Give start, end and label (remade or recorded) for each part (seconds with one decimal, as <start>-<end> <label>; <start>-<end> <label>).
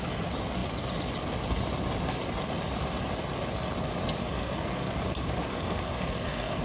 0.0-4.2 recorded; 4.2-4.9 remade; 4.9-5.5 recorded; 5.5-6.6 remade